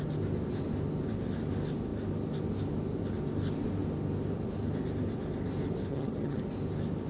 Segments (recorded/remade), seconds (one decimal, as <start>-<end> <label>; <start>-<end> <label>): 0.0-5.9 recorded; 5.9-6.4 remade; 6.4-7.1 recorded